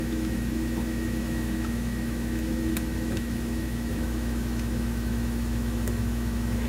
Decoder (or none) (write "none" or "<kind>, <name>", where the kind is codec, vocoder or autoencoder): autoencoder, DAC-VAE